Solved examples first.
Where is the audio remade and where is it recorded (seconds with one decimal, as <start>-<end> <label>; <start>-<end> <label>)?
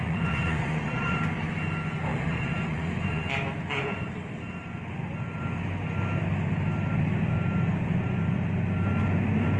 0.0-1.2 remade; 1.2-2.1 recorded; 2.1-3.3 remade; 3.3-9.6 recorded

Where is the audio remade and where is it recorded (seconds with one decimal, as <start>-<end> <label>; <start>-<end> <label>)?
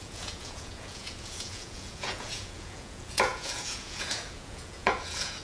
0.0-5.4 remade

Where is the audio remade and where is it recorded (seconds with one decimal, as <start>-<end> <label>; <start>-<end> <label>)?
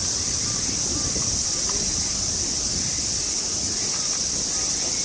0.0-3.3 recorded; 3.3-4.0 remade; 4.0-5.0 recorded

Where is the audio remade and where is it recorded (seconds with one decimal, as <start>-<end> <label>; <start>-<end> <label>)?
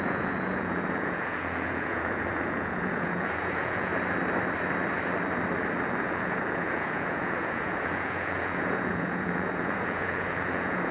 0.0-3.9 remade; 3.9-6.0 recorded; 6.0-10.9 remade